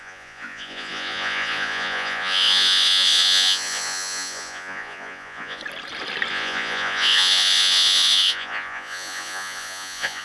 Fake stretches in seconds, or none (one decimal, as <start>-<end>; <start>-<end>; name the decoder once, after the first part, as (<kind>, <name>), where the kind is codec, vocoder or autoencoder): 0.0-5.6 (vocoder, Vocos); 6.3-10.2